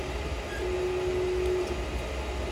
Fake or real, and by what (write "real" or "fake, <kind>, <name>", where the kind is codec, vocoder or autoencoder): real